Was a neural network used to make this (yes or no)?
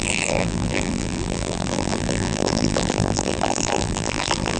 yes